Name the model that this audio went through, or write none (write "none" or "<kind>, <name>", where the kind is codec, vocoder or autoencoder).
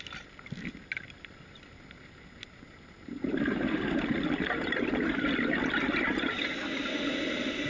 none